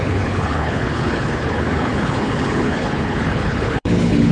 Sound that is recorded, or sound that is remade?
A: remade